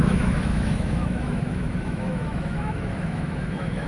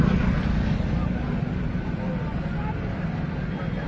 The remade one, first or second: first